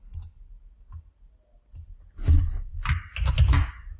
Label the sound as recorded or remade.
recorded